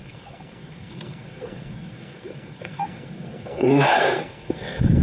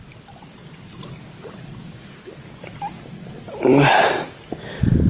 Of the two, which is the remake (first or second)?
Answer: first